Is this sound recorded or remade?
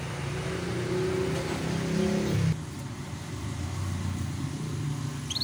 recorded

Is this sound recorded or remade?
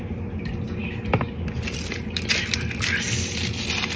recorded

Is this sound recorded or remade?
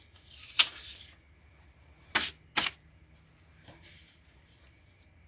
recorded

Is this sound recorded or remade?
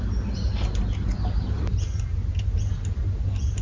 recorded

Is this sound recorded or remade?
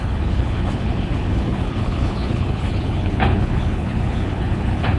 remade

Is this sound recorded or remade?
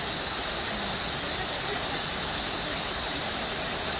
recorded